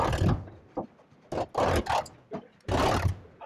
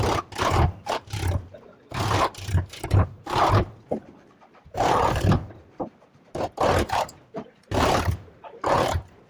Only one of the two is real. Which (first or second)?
first